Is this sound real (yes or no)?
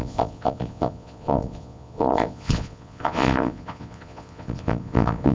no